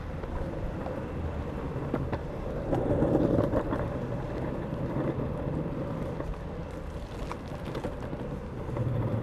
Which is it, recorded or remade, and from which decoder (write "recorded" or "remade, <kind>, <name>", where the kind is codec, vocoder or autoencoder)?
recorded